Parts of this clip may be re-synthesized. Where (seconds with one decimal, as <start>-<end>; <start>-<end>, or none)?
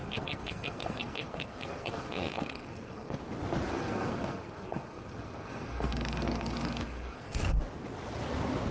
0.0-3.2; 3.7-7.6